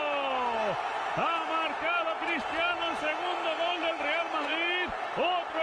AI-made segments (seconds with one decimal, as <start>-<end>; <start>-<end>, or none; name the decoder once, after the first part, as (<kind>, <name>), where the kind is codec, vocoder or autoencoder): none